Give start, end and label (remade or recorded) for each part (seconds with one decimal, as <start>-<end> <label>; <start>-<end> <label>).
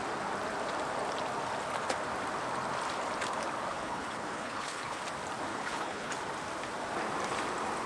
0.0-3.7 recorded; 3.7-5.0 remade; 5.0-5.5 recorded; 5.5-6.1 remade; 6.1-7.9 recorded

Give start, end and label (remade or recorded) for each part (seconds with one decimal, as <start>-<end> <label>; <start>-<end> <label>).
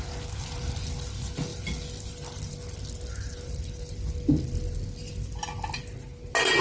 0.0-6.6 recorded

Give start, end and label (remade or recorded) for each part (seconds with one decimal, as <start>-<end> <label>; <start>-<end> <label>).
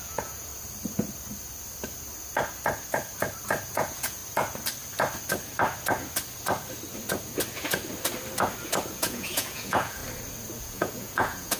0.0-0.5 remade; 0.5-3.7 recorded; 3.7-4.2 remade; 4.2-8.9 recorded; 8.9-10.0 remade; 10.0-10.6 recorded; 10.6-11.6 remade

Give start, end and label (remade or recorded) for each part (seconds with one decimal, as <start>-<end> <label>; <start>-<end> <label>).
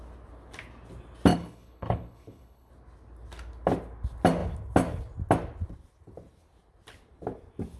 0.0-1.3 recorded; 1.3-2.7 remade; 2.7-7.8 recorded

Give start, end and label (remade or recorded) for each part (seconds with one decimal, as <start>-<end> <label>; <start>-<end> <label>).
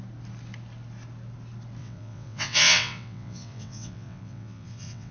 0.0-1.8 recorded; 1.8-5.1 remade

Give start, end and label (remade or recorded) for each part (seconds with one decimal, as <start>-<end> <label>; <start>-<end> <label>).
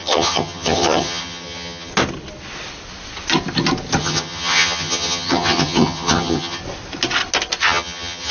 0.0-1.9 remade; 1.9-4.0 recorded; 4.0-6.6 remade; 6.6-7.6 recorded; 7.6-8.3 remade